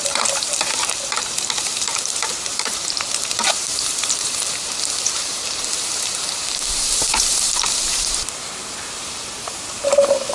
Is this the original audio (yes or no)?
no